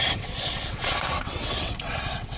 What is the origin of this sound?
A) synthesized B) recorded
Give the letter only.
A